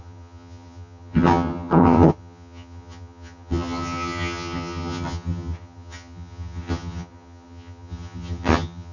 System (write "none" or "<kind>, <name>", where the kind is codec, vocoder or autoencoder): vocoder, HiFi-GAN